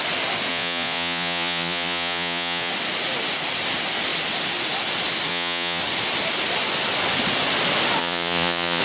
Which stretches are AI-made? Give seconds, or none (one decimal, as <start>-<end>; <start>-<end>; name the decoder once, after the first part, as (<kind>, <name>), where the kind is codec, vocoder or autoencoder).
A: 0.5-2.7 (vocoder, Vocos); 5.3-5.8; 8.0-8.8